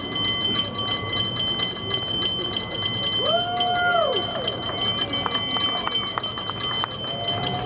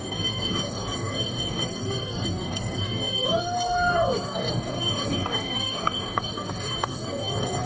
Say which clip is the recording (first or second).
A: first